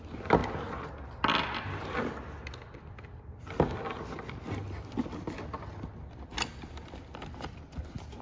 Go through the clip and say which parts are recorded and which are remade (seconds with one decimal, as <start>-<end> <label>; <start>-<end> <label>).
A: 0.0-8.2 recorded